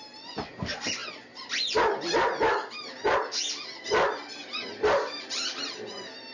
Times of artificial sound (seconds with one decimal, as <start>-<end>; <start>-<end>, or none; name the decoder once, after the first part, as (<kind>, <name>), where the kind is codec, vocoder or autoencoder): none